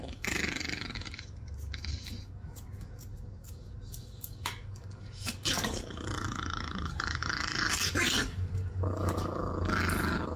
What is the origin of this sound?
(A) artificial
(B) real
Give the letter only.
A